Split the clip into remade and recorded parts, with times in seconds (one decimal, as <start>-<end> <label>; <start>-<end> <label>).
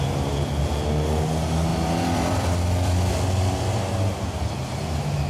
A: 0.0-1.7 recorded; 1.7-3.1 remade; 3.1-5.3 recorded